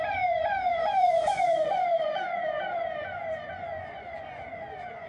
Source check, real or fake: fake